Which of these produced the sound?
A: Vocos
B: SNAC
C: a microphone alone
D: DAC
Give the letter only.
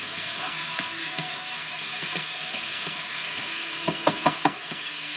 B